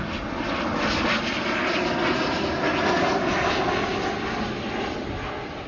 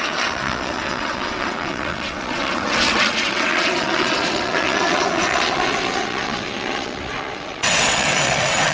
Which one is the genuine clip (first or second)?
first